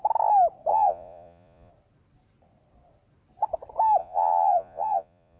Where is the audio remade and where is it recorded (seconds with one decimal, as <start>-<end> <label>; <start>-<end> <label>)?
0.0-0.7 recorded; 0.7-1.7 remade; 1.7-4.0 recorded; 4.0-5.4 remade